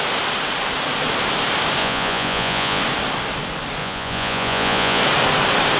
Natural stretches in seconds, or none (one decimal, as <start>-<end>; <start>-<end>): 0.0-1.8; 2.8-3.8; 5.0-5.8